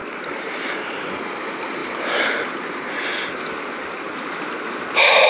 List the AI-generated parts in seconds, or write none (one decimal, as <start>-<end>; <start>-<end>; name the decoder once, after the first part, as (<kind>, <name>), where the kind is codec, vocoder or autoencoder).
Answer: none